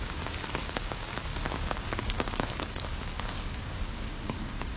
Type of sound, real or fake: fake